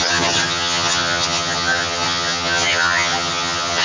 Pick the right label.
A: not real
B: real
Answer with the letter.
A